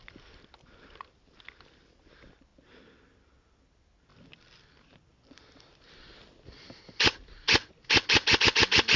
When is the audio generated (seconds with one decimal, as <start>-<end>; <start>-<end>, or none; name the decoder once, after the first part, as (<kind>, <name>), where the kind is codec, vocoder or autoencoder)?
none